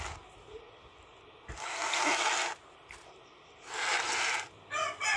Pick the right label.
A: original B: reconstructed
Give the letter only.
A